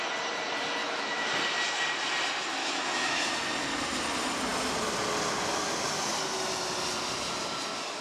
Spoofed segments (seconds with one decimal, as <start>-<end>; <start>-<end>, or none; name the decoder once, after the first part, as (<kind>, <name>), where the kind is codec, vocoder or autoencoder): 0.8-1.3 (autoencoder, DAC-VAE); 2.6-3.3